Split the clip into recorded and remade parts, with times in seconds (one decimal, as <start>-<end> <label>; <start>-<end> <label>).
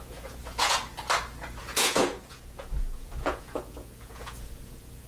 0.0-0.8 remade; 0.8-1.6 recorded; 1.6-5.1 remade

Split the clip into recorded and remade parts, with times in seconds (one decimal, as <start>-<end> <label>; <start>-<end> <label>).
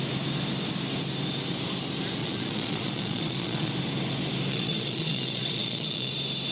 0.0-2.2 recorded; 2.2-3.7 remade; 3.7-4.5 recorded; 4.5-6.1 remade; 6.1-6.5 recorded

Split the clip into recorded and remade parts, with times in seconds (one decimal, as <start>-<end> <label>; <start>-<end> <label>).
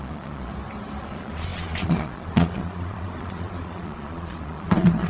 0.0-0.5 remade; 0.5-1.0 recorded; 1.0-5.1 remade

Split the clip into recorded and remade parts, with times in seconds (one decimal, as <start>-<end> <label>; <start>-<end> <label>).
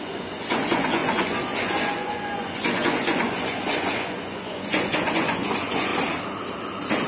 0.0-5.9 remade; 5.9-7.1 recorded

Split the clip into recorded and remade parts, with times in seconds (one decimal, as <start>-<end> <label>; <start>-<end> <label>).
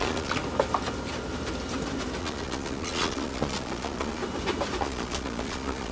0.0-0.4 remade; 0.4-2.2 recorded; 2.2-4.2 remade; 4.2-4.8 recorded; 4.8-5.9 remade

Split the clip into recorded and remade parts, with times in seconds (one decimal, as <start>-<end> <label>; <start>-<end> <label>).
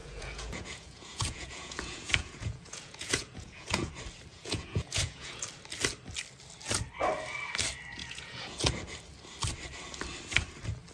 0.0-3.9 remade; 3.9-4.3 recorded; 4.3-5.4 remade; 5.4-8.0 recorded; 8.0-8.7 remade; 8.7-10.9 recorded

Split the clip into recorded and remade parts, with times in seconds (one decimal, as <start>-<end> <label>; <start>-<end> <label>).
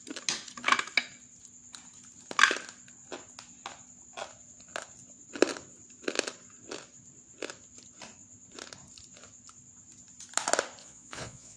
0.0-10.8 recorded; 10.8-11.6 remade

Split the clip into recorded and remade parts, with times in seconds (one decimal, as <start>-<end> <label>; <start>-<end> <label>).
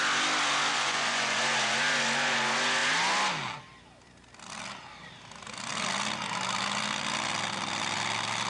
0.0-0.7 recorded; 0.7-1.4 remade; 1.4-8.5 recorded